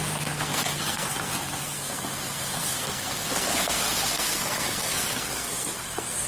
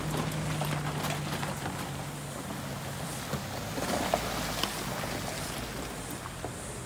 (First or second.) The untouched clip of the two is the second